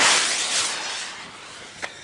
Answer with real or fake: real